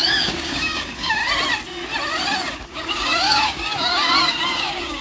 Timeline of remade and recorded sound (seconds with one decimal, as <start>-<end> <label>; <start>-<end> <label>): 0.0-1.2 remade; 1.2-2.5 recorded; 2.5-5.0 remade